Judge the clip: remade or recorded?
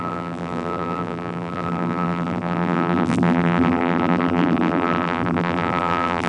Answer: remade